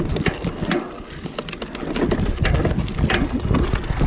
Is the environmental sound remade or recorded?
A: recorded